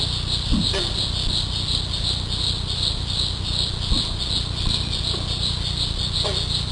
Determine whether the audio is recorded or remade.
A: recorded